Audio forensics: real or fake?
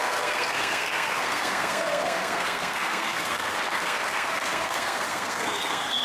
fake